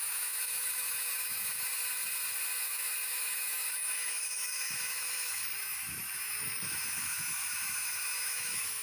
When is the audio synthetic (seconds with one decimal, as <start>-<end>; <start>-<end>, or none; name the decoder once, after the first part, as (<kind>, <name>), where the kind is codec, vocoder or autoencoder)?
0.0-1.7 (autoencoder, DAC-VAE); 2.6-8.8